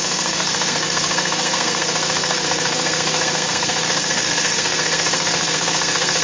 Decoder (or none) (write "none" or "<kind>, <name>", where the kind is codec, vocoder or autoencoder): codec, SNAC